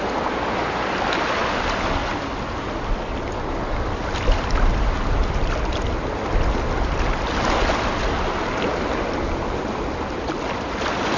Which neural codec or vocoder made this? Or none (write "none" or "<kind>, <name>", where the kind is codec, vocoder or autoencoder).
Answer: none